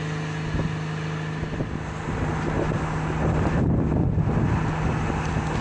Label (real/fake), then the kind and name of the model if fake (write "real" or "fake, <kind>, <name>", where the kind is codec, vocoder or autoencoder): real